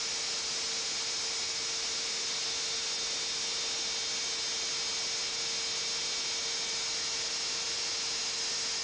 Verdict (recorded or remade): recorded